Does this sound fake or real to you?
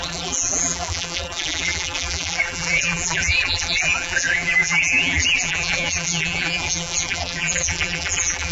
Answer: fake